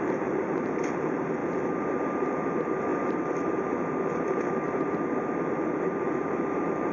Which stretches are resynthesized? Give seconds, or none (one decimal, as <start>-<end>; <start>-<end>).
0.0-6.9